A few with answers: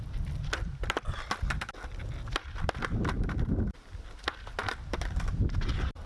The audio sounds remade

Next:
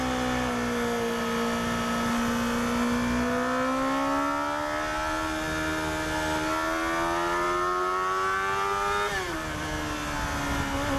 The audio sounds recorded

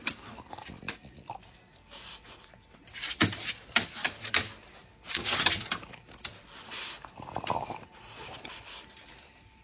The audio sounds recorded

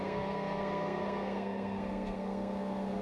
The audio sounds remade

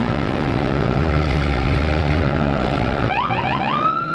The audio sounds remade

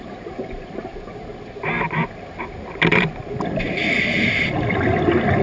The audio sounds recorded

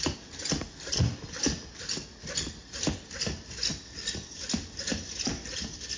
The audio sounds recorded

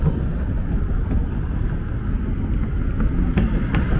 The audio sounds recorded